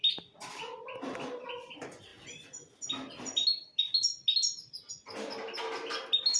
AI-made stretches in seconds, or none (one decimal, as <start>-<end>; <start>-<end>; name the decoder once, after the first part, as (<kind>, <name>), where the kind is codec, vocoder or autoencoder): none